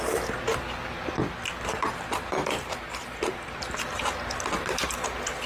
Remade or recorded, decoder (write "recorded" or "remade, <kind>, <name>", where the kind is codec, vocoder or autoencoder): recorded